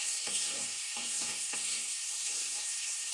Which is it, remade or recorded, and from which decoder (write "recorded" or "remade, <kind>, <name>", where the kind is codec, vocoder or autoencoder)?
remade, codec, SNAC